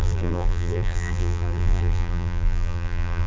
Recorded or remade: remade